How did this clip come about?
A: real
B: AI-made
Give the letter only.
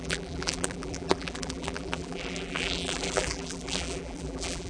B